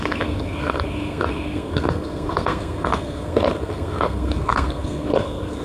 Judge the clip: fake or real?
fake